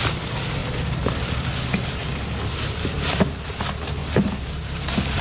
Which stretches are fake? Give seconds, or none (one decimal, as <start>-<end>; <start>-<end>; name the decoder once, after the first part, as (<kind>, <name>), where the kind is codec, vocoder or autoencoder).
4.0-4.6 (vocoder, BigVGAN v2)